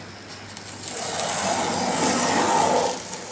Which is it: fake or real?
real